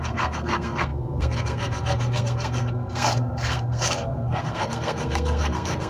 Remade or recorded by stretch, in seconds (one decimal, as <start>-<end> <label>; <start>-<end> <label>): 0.0-5.9 remade